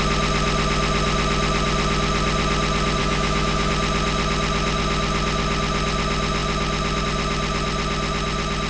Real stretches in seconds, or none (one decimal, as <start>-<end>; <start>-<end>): 0.0-3.0; 3.7-8.7